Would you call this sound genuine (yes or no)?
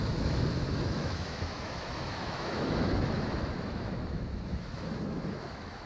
no